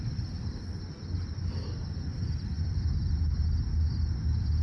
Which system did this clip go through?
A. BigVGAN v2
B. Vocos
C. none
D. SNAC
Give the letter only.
C